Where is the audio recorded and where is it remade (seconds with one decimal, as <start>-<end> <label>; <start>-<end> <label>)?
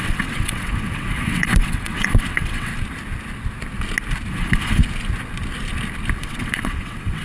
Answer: 0.0-2.7 remade; 2.7-4.3 recorded; 4.3-4.8 remade; 4.8-6.2 recorded; 6.2-7.2 remade